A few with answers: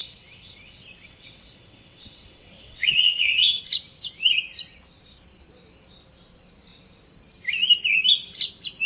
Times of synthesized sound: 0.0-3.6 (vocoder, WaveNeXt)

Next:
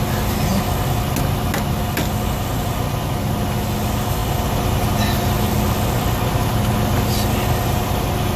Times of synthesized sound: none

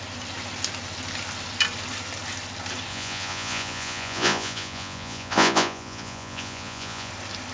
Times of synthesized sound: 2.9-7.1 (vocoder, Vocos)

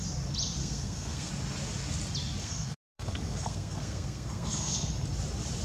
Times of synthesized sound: 0.6-1.3 (codec, SNAC); 2.4-4.9